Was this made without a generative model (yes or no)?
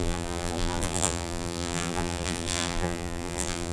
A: no